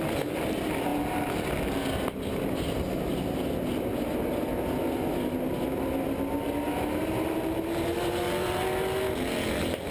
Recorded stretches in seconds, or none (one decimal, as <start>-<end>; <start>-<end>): 0.0-9.9